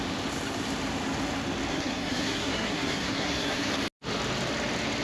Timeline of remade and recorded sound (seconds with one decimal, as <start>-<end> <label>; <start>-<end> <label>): 0.0-1.7 recorded; 1.7-3.7 remade; 3.7-5.0 recorded